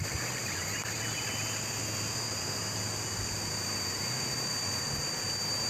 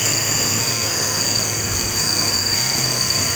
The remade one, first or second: second